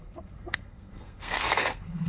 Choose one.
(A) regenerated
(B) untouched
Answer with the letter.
A